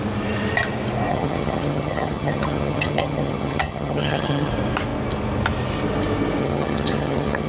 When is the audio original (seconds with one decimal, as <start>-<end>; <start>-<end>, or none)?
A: 0.0-1.1; 4.5-6.4